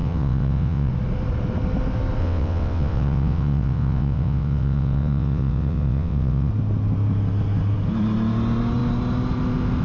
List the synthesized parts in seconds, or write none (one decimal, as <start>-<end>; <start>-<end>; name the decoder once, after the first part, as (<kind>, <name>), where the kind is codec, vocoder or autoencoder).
0.0-0.9 (vocoder, WaveNeXt); 2.2-6.5